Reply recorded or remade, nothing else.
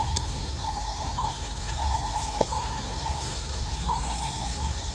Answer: remade